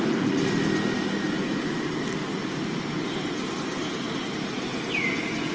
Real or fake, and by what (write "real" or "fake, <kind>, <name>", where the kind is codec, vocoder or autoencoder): real